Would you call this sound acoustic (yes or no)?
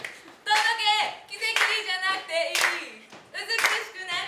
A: yes